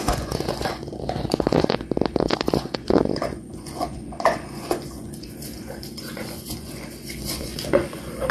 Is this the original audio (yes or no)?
no